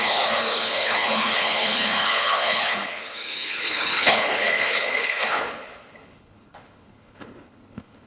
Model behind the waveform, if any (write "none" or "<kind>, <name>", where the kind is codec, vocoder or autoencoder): codec, HILCodec